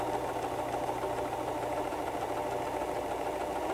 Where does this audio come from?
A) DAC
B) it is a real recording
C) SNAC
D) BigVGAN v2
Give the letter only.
B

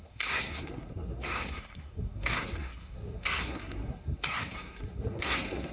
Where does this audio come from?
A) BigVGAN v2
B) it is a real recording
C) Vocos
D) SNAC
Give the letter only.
D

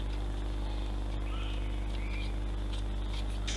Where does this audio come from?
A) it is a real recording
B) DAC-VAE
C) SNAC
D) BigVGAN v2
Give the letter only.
A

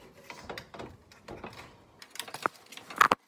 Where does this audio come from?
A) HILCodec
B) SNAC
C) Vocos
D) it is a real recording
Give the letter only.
D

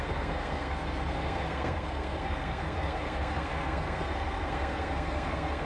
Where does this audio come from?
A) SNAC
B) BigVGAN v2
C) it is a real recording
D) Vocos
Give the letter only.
A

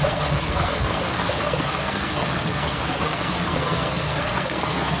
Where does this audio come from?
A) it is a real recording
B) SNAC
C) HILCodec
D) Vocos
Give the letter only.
B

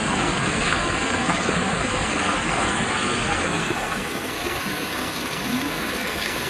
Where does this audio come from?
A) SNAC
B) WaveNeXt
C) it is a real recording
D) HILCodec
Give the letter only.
A